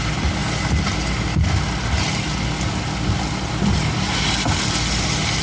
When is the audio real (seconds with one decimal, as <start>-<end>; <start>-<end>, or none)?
0.0-5.4